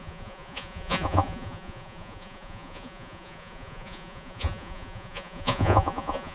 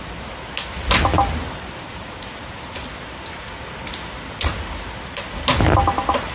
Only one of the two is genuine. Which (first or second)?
second